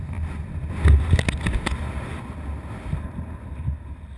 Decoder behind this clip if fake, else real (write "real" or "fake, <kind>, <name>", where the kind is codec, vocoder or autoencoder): real